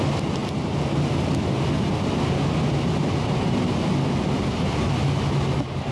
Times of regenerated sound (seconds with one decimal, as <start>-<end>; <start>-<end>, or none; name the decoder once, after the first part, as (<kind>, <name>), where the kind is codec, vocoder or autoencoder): none